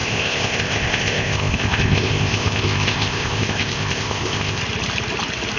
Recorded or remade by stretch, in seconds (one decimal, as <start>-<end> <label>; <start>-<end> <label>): 0.0-4.6 remade; 4.6-5.6 recorded